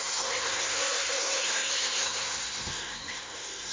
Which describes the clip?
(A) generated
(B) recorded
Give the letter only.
A